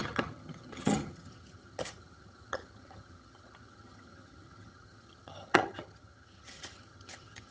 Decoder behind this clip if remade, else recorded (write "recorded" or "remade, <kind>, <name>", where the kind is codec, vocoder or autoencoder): remade, vocoder, HiFi-GAN